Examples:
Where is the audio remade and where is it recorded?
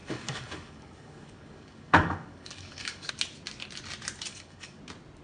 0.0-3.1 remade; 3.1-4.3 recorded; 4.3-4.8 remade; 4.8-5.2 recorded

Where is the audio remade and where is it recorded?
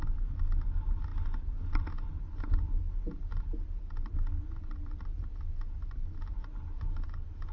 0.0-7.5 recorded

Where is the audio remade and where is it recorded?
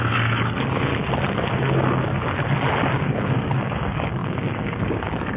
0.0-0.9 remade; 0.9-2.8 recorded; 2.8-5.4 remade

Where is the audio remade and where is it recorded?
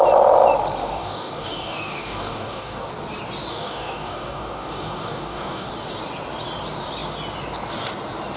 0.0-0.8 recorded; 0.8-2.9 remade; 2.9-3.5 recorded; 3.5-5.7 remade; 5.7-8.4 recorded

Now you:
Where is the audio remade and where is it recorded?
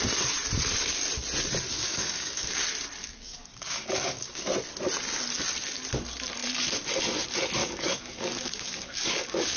0.0-1.7 recorded; 1.7-2.6 remade; 2.6-3.0 recorded; 3.0-4.4 remade; 4.4-7.6 recorded; 7.6-9.6 remade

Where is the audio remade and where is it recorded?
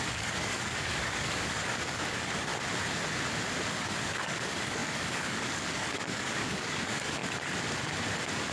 0.0-2.5 remade; 2.5-3.7 recorded; 3.7-7.2 remade; 7.2-8.5 recorded